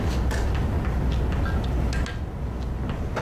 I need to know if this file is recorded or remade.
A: recorded